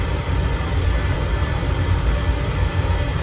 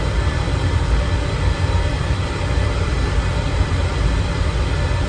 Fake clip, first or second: second